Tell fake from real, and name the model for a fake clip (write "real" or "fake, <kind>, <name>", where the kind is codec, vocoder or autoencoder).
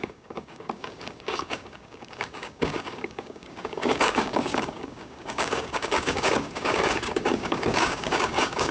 fake, codec, DAC